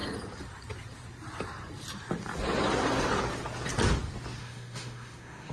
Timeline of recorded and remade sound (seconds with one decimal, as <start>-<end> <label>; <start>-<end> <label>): 0.0-4.4 recorded; 4.4-5.5 remade